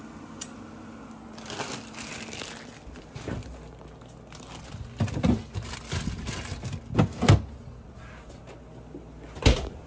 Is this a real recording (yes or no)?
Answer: yes